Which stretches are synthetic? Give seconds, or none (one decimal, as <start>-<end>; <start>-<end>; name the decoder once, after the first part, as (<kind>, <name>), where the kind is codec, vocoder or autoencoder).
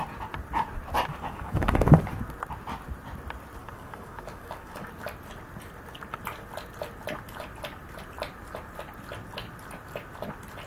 1.1-2.0 (codec, DAC); 3.6-4.9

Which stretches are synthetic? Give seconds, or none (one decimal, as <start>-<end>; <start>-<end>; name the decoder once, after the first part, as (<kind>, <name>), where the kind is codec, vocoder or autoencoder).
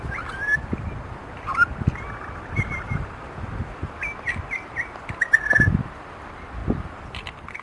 none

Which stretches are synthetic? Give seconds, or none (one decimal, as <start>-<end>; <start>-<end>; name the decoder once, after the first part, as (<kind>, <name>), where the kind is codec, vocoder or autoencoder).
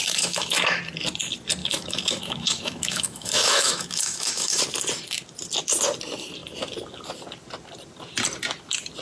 0.0-0.8 (autoencoder, DAC-VAE); 1.6-4.6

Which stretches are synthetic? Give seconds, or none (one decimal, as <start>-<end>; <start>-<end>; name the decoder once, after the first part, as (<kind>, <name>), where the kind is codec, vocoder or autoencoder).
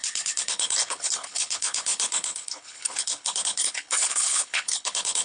0.0-5.2 (codec, HILCodec)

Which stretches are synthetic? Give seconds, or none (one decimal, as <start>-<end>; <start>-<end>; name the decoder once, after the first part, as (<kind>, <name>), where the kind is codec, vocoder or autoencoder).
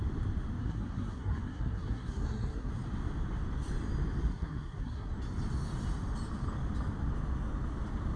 0.6-2.7 (codec, SNAC); 4.3-5.1